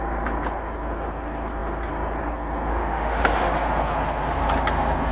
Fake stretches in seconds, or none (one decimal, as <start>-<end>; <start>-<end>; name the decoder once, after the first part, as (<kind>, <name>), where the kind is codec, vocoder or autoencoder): 2.7-3.5 (autoencoder, DAC-VAE)

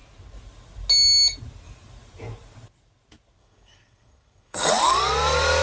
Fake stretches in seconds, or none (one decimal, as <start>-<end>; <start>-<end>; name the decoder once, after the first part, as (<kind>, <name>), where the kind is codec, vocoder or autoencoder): 3.4-4.7 (codec, SNAC)

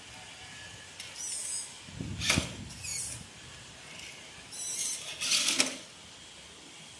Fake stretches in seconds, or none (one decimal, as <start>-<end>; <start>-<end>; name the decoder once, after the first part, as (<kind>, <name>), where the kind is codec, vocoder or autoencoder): 1.4-1.9 (autoencoder, DAC-VAE)